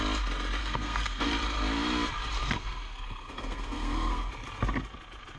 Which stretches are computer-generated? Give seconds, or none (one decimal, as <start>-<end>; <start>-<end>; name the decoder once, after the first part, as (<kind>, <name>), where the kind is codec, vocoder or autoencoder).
0.6-1.3 (codec, SNAC); 2.4-4.3